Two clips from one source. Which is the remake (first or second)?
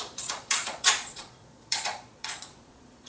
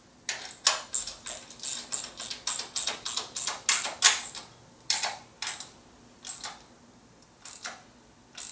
first